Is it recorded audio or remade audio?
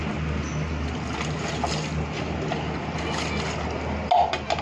recorded